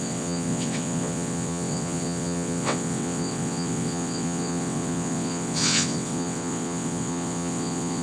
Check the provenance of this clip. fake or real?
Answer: fake